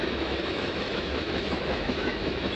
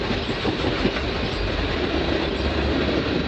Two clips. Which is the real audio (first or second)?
second